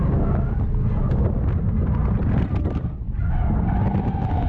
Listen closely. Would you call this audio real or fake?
real